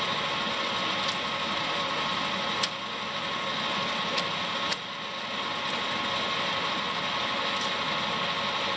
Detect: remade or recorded recorded